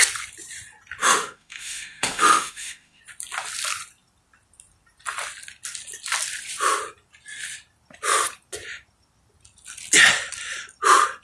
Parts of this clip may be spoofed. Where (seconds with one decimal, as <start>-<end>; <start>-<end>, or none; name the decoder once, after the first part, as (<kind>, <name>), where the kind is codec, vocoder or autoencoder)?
1.0-3.0 (autoencoder, DAC-VAE)